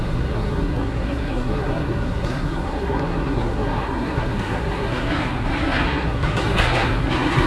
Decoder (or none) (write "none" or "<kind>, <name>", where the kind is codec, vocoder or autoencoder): codec, SNAC